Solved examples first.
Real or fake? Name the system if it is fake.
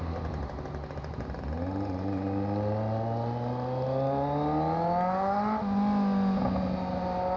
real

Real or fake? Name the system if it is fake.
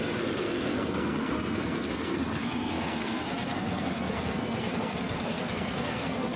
fake, codec, SNAC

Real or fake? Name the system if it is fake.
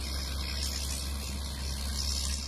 real